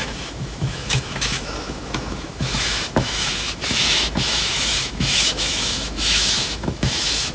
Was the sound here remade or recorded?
remade